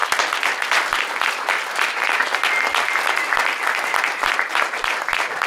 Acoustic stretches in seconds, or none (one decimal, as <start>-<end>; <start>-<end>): 0.0-1.3; 2.2-3.7